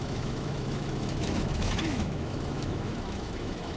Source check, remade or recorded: remade